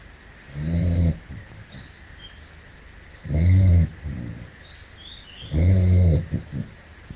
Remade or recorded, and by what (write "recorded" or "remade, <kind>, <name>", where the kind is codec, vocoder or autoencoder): recorded